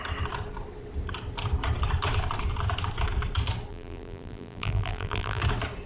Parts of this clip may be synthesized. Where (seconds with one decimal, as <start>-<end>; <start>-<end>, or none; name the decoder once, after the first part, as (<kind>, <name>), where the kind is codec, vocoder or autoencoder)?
3.7-5.4 (vocoder, BigVGAN v2)